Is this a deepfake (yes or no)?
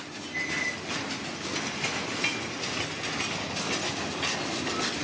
no